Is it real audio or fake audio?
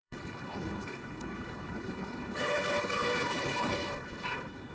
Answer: fake